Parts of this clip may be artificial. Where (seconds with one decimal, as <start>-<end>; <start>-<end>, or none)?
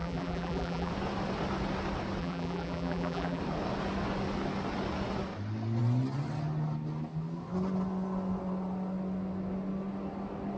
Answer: 0.0-0.9; 2.2-3.4